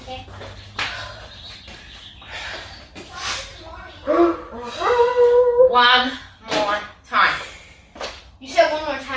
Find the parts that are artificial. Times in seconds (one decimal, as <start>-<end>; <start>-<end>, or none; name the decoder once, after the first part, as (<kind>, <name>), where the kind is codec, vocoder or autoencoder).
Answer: none